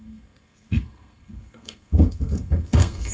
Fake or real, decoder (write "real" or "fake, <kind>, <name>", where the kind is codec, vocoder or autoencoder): fake, codec, SNAC